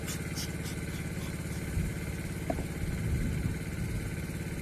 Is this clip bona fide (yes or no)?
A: yes